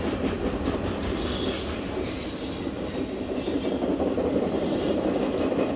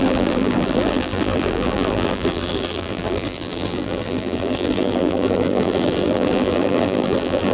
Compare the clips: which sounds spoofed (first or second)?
second